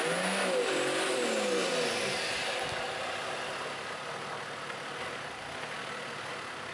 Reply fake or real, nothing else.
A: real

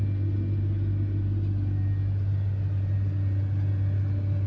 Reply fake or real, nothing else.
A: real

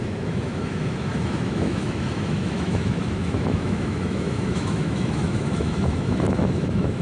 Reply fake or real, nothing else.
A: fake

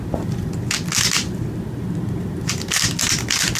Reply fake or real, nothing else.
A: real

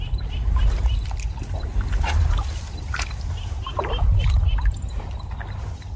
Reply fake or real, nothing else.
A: real